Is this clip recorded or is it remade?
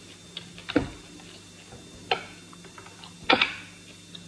recorded